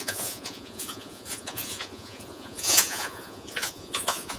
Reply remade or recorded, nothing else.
remade